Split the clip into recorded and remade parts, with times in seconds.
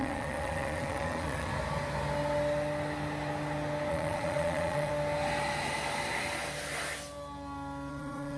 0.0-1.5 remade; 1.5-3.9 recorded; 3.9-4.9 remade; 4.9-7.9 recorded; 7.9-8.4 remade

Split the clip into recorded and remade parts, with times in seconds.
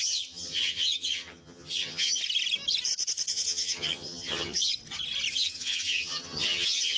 0.0-2.2 remade; 2.2-3.3 recorded; 3.3-4.7 remade; 4.7-5.3 recorded; 5.3-7.0 remade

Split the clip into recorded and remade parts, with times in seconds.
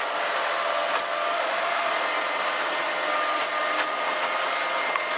0.0-1.3 recorded; 1.3-1.9 remade; 1.9-5.2 recorded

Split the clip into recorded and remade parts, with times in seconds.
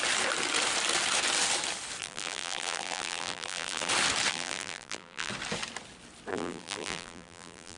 0.0-2.0 recorded; 2.0-3.9 remade; 3.9-4.3 recorded; 4.3-5.3 remade; 5.3-6.3 recorded; 6.3-7.8 remade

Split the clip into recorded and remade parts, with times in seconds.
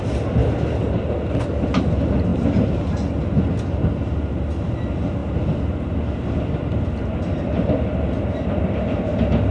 0.0-9.5 recorded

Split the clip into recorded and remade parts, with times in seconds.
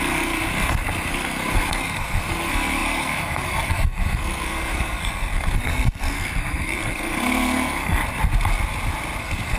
0.0-8.0 remade; 8.0-9.2 recorded; 9.2-9.6 remade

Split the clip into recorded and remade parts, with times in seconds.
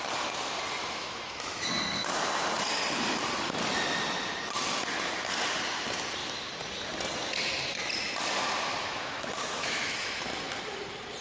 0.0-0.8 recorded; 0.8-1.7 remade; 1.7-8.8 recorded; 8.8-10.2 remade; 10.2-11.2 recorded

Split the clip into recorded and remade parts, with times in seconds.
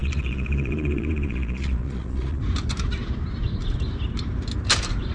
0.0-2.4 remade; 2.4-5.1 recorded